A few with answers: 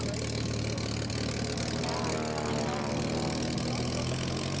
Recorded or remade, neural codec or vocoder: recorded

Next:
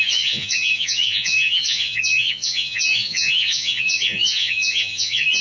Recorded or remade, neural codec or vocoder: remade, vocoder, Vocos